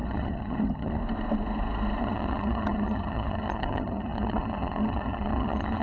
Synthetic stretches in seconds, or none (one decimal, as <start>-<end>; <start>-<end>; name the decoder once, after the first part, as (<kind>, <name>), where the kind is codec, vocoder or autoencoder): 0.0-1.0 (vocoder, HiFi-GAN); 2.0-5.8